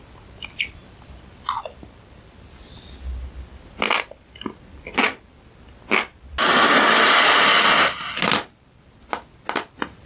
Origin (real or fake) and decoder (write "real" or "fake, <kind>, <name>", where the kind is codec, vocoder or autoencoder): real